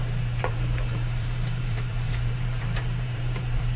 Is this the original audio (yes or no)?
no